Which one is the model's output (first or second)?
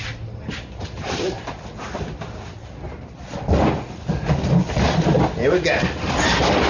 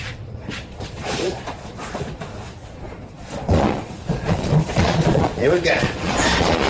second